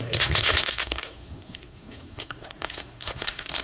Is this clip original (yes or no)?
no